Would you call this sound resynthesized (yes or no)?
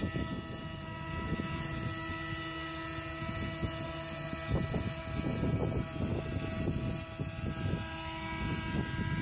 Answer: no